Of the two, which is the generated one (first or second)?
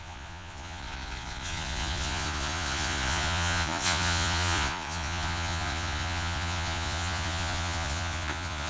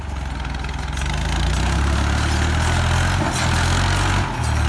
first